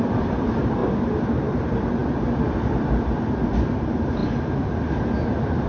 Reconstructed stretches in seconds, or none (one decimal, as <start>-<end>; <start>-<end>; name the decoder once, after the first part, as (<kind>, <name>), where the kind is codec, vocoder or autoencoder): 0.0-0.8 (vocoder, BigVGAN v2); 1.4-2.0; 3.5-5.7